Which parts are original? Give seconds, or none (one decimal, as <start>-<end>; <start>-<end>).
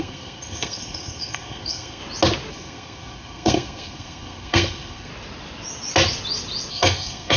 2.0-2.5; 5.1-6.7